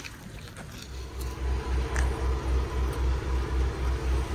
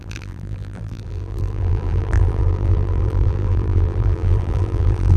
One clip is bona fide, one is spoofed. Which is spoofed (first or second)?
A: second